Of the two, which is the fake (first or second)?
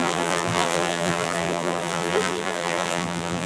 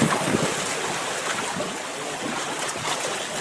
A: first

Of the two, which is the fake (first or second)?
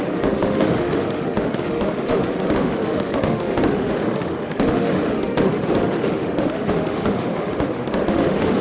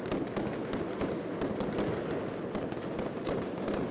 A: first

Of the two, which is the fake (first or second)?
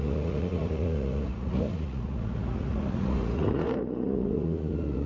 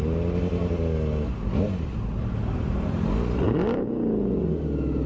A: first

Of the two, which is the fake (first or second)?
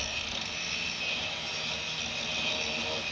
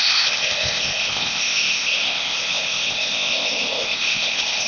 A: second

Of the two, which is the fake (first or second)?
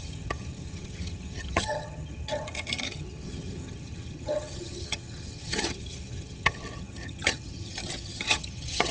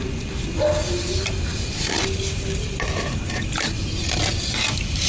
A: first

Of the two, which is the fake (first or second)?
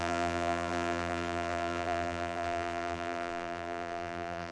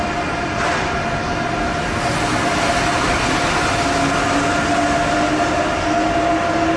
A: first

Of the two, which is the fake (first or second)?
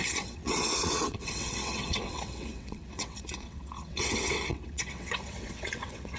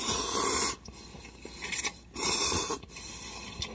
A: first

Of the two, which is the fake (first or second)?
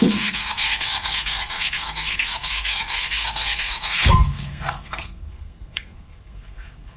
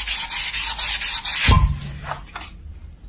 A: first